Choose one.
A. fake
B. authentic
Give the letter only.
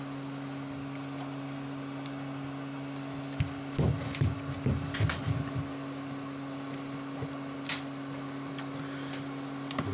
B